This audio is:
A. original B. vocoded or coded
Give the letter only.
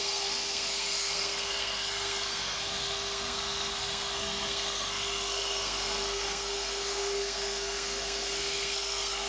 B